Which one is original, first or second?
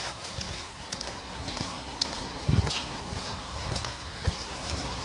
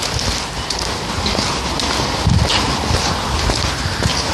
second